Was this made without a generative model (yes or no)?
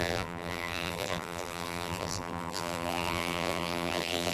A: no